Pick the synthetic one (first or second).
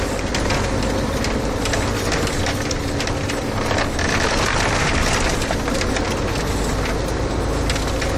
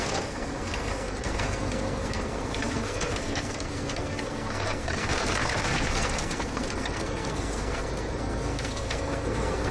second